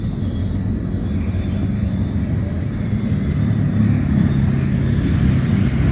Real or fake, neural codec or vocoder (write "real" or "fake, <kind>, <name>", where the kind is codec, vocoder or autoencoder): real